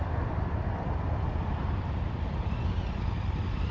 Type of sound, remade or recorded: remade